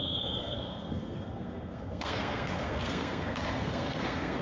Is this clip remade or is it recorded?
remade